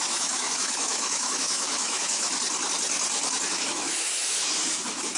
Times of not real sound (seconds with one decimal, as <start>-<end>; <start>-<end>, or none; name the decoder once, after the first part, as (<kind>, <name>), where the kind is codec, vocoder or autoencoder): 0.0-2.3 (autoencoder, DAC-VAE); 3.5-5.2